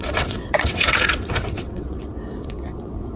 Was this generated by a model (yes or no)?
yes